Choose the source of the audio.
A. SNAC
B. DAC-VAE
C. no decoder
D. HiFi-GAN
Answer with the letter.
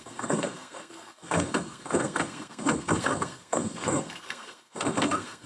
A